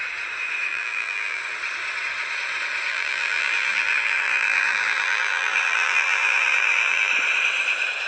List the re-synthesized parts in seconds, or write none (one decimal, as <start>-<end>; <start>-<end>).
0.7-1.4; 2.9-7.1